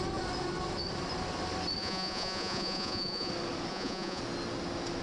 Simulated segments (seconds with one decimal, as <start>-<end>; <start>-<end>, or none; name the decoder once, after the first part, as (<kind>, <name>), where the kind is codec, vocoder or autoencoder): 1.8-3.3 (vocoder, Vocos); 3.7-4.2

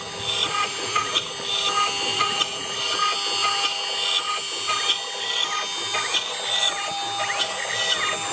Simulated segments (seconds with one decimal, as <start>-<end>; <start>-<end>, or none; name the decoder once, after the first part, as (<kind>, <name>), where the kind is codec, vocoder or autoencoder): 0.4-1.3 (vocoder, Vocos); 2.1-2.8

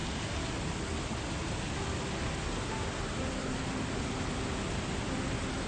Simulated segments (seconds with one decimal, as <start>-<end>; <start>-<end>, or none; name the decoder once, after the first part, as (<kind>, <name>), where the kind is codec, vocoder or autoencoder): none

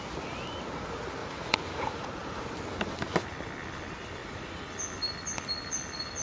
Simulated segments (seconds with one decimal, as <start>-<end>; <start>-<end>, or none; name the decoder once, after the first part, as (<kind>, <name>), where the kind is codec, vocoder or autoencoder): 1.2-2.4 (vocoder, Vocos); 4.2-4.7

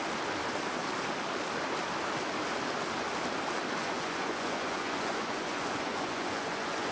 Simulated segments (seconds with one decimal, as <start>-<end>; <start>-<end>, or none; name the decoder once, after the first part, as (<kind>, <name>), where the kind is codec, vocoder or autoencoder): 3.8-6.9 (vocoder, Vocos)